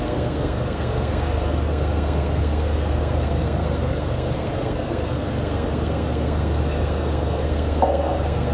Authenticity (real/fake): fake